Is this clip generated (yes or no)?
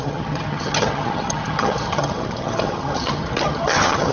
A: yes